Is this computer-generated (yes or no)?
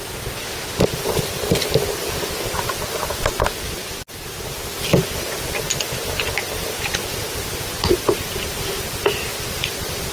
no